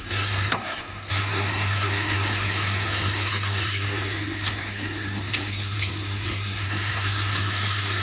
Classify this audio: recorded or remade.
remade